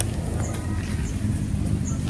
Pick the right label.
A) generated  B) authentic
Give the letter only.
B